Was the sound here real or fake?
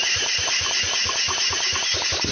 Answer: real